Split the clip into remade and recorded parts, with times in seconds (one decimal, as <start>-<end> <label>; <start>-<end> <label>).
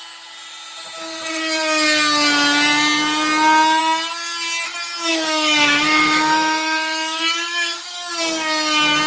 0.0-5.1 recorded; 5.1-8.1 remade; 8.1-9.1 recorded